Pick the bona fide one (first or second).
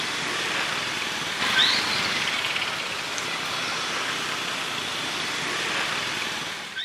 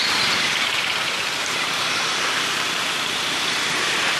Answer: first